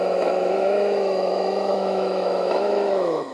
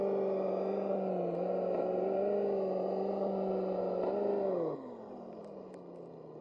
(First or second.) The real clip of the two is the second